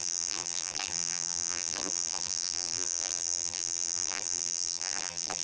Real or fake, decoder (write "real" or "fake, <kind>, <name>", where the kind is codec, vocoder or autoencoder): fake, vocoder, BigVGAN v2